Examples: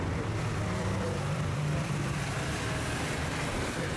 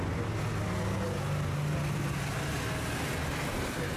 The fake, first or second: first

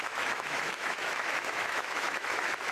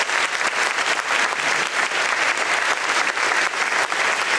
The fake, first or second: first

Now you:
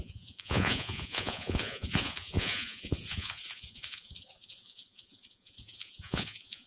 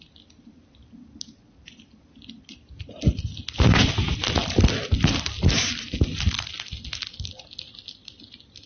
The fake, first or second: first